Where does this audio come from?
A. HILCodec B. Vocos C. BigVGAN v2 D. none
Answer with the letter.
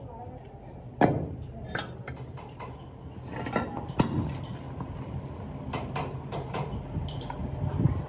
D